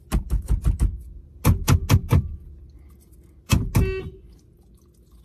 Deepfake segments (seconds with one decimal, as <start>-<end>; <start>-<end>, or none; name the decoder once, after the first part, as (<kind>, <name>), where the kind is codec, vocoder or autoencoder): none